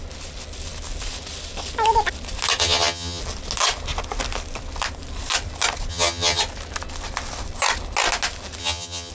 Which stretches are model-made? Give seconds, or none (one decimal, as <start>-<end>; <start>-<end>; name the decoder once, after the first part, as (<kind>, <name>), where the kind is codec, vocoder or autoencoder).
2.6-3.2 (vocoder, HiFi-GAN); 5.9-6.4; 8.6-9.1